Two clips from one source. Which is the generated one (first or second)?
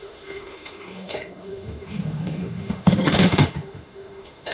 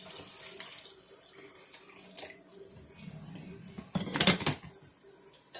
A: first